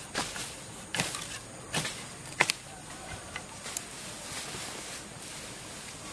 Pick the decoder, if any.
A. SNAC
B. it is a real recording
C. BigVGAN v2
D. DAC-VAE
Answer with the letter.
B